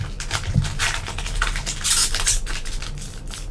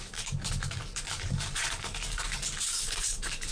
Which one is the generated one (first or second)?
second